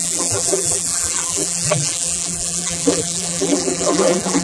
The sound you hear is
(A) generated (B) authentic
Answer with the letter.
A